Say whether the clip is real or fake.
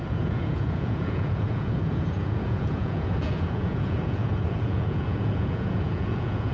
fake